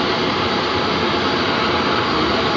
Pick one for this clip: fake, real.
real